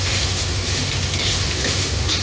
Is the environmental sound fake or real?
fake